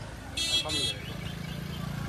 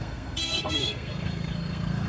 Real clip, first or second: first